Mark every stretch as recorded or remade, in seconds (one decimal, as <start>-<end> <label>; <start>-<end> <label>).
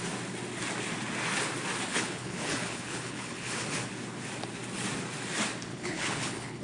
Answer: 0.0-1.9 recorded; 1.9-3.6 remade; 3.6-5.7 recorded; 5.7-6.6 remade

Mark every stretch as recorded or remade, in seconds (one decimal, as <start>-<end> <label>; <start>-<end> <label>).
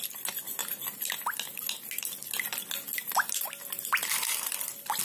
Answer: 0.0-5.0 recorded